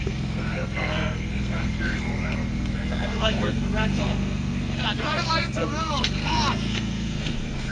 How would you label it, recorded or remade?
remade